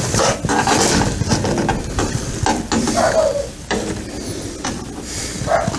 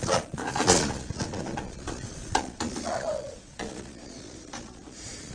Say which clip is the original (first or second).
first